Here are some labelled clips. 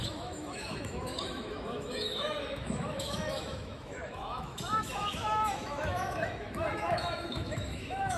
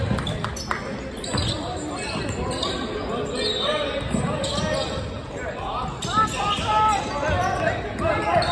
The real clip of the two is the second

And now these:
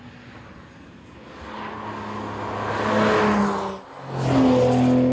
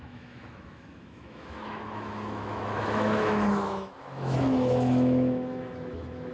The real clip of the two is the first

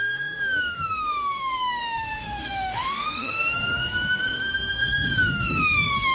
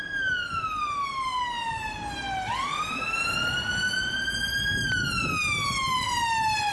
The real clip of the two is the second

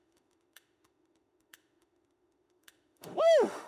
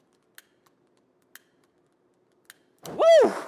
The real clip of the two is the second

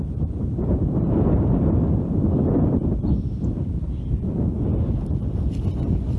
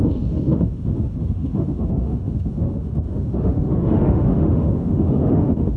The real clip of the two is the first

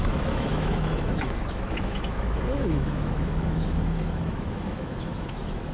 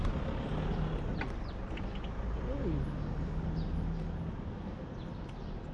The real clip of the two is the second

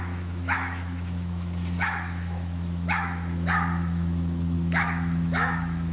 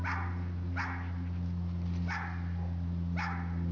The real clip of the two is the second